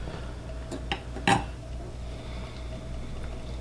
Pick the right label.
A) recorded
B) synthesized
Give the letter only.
A